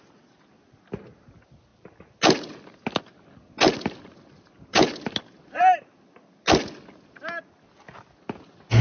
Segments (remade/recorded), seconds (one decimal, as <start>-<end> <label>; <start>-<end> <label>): 0.0-8.8 recorded

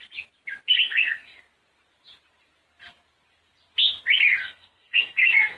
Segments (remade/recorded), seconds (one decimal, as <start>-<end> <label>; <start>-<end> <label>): 0.0-0.7 recorded; 0.7-1.4 remade; 1.4-4.4 recorded; 4.4-5.6 remade

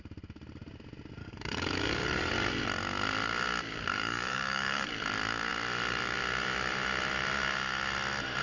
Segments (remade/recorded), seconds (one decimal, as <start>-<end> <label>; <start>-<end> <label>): 0.0-1.2 recorded; 1.2-2.3 remade; 2.3-3.9 recorded; 3.9-4.9 remade; 4.9-8.4 recorded

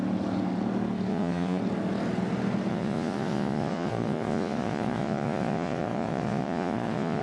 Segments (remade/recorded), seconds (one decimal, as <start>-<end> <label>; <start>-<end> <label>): 0.0-1.1 recorded; 1.1-1.6 remade; 1.6-2.7 recorded; 2.7-7.2 remade

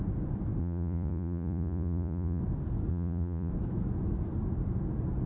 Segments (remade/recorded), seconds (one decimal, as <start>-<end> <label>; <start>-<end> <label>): 0.0-0.6 recorded; 0.6-2.4 remade; 2.4-2.9 recorded; 2.9-3.5 remade; 3.5-5.3 recorded

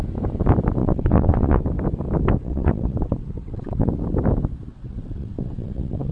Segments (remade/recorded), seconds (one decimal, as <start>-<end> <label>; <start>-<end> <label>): 0.0-0.8 recorded; 0.8-1.6 remade; 1.6-2.4 recorded; 2.4-3.9 remade; 3.9-4.7 recorded; 4.7-6.1 remade

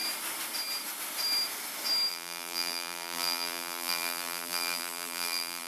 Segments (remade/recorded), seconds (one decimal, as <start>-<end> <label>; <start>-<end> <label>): 0.0-2.1 recorded; 2.1-5.7 remade

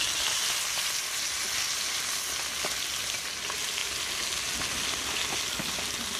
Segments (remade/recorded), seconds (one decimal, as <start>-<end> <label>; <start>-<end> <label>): 0.0-6.2 recorded